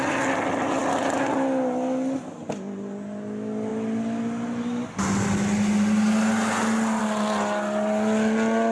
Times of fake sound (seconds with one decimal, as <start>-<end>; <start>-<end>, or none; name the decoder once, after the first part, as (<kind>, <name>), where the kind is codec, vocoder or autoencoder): none